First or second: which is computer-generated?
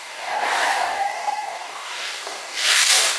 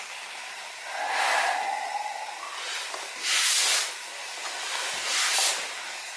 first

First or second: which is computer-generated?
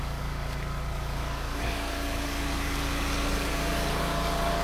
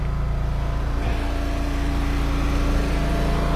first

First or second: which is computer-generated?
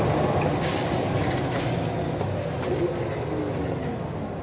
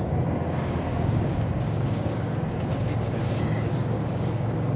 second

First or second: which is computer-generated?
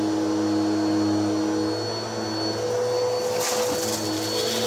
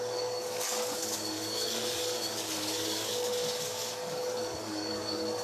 second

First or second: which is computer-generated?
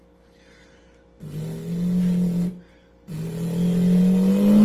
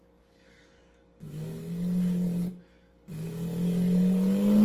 second